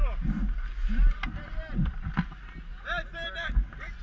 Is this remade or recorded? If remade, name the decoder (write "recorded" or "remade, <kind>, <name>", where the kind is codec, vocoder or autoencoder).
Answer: recorded